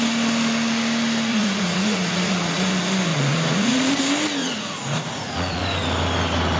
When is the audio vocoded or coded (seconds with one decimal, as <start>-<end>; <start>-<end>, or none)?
1.3-2.7; 3.1-3.9; 4.4-5.6